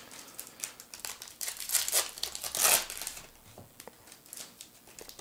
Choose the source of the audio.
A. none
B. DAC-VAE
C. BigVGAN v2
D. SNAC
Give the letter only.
A